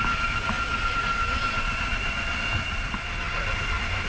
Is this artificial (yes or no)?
no